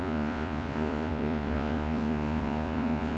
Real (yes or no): no